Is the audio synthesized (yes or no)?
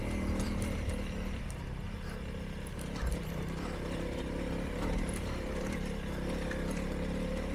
no